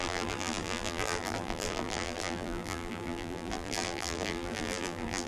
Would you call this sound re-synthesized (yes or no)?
yes